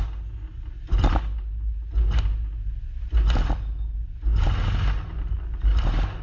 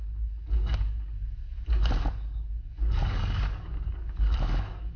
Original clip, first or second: first